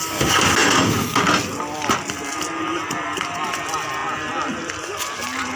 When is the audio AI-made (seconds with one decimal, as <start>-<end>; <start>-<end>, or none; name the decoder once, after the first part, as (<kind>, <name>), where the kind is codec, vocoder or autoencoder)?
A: none